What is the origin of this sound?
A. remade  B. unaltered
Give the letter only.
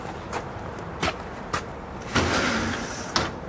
B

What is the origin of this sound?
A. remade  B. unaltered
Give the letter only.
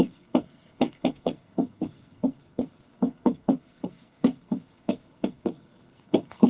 A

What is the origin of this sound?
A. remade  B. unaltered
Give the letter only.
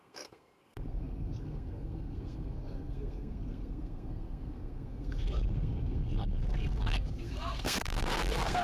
A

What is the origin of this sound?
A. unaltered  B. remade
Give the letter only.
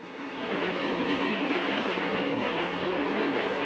B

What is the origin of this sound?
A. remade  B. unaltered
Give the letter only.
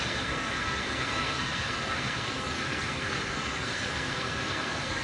A